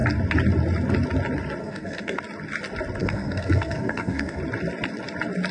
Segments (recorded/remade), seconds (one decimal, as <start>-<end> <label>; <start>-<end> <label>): 0.0-1.6 recorded; 1.6-2.2 remade; 2.2-3.0 recorded; 3.0-4.4 remade; 4.4-5.5 recorded